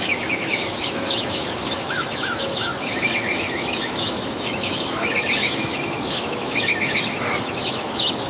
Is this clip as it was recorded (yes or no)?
no